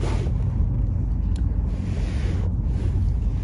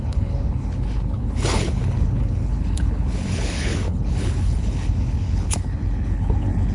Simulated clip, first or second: second